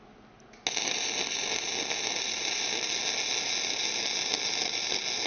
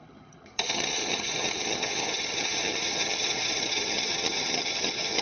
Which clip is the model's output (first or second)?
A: second